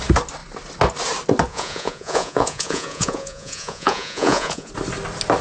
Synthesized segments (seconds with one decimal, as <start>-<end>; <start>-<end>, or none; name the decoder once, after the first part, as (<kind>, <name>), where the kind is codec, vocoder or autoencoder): 1.5-4.7 (vocoder, Vocos)